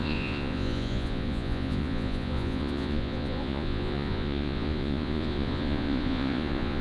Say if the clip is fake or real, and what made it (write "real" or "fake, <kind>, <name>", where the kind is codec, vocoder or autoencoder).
fake, vocoder, Vocos